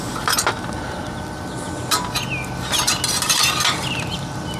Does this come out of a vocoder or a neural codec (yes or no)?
no